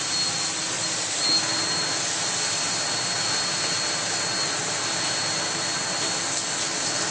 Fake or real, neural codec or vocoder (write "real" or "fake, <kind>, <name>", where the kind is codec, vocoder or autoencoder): real